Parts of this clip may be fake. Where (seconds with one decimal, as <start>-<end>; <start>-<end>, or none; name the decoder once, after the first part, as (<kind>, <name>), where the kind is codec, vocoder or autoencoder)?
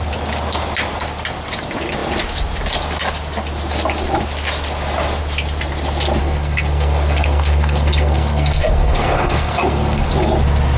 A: 6.2-10.1 (codec, SNAC)